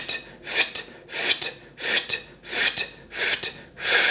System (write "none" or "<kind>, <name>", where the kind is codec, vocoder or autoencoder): none